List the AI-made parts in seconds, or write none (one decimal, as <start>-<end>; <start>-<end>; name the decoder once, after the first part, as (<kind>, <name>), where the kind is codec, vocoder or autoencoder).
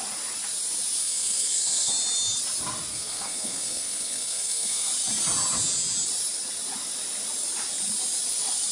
1.0-1.9 (codec, SNAC); 2.9-4.9